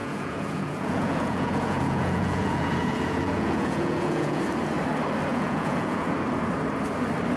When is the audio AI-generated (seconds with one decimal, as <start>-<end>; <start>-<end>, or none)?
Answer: 0.0-4.4; 5.3-6.1